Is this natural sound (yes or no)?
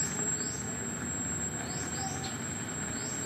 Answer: yes